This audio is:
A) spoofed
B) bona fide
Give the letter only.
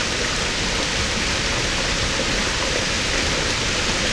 B